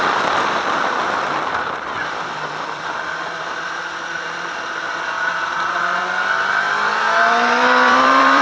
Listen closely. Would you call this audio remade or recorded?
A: remade